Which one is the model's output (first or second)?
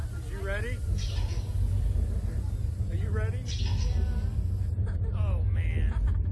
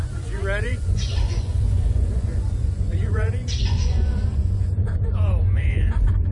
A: second